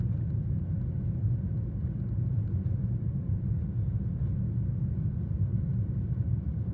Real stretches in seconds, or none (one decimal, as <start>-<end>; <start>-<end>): 0.0-2.8; 4.2-5.5; 6.2-6.7